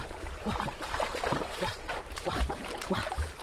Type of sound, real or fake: fake